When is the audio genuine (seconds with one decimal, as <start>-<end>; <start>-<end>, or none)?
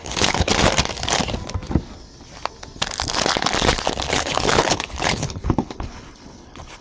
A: 0.5-4.1